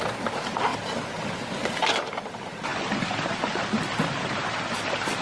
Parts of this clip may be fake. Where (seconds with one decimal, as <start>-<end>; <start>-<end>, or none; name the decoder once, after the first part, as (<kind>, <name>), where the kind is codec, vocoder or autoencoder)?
none